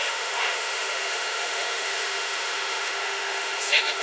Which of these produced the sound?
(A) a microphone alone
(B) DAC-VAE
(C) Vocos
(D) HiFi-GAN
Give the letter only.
B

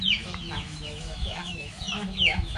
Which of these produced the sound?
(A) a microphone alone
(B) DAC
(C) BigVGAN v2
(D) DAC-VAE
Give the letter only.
D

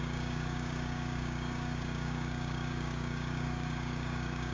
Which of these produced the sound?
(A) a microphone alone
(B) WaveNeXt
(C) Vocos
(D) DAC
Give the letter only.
D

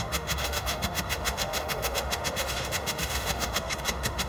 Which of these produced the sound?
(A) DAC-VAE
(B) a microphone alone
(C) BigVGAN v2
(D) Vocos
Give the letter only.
A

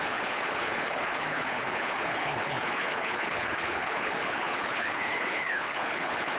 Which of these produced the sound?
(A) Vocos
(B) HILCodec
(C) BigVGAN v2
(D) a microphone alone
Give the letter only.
B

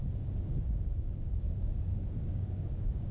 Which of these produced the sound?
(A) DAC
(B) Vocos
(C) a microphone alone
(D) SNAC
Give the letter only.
A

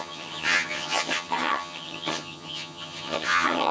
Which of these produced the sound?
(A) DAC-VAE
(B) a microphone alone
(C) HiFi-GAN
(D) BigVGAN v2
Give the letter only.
C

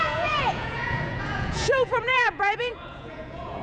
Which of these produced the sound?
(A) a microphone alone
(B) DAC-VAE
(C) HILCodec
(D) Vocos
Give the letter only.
D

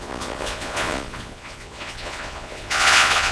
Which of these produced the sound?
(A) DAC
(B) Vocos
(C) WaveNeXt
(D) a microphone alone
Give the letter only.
B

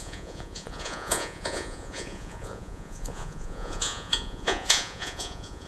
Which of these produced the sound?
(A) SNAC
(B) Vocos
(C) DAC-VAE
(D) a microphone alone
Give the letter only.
B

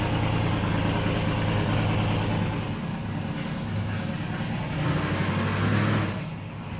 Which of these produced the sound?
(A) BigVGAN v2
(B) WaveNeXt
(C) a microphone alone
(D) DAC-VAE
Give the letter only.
C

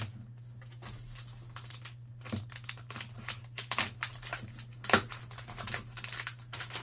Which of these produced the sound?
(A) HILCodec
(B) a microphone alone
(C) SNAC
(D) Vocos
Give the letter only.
B